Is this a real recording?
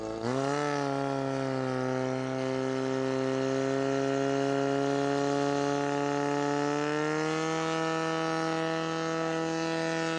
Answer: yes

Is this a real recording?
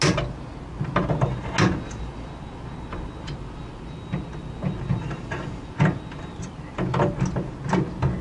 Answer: yes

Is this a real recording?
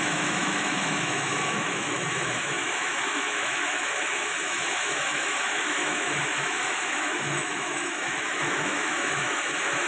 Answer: no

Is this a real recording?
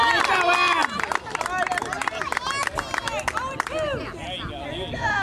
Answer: yes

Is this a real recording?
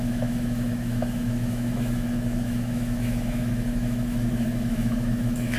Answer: no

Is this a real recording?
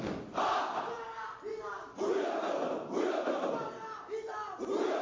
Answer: yes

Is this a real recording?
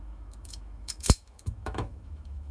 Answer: no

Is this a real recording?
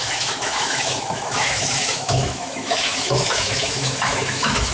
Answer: no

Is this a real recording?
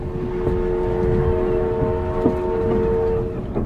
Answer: yes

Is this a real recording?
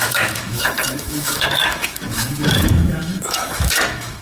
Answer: no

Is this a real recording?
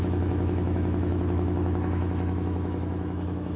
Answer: no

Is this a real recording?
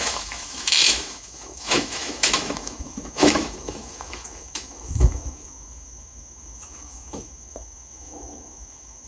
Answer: no